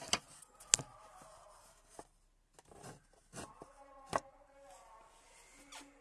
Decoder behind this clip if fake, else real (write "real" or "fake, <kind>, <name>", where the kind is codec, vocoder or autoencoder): real